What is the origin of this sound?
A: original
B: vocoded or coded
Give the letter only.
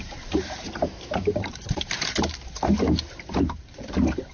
B